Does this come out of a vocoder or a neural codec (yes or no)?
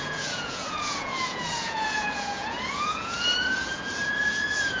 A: yes